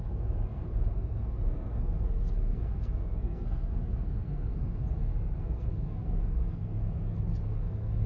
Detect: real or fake fake